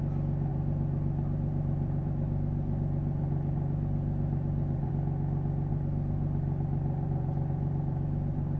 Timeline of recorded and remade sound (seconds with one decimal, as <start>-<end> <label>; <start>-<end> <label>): 0.0-0.5 recorded; 0.5-4.9 remade; 4.9-5.7 recorded; 5.7-8.6 remade